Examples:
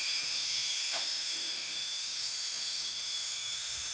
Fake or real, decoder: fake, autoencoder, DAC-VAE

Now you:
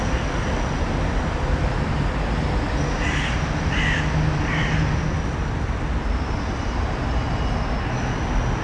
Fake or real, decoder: real